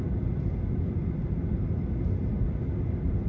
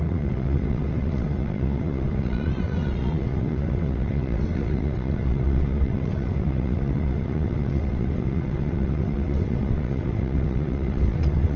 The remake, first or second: second